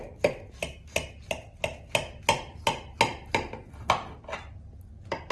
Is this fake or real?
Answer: real